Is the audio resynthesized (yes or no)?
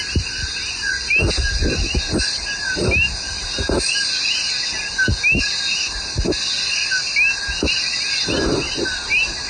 no